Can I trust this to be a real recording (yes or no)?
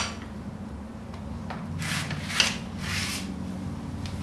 yes